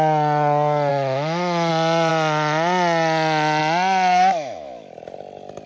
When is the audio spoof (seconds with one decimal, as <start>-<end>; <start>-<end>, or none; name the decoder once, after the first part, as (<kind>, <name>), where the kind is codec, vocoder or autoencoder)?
0.9-1.7 (autoencoder, DAC-VAE); 4.1-4.9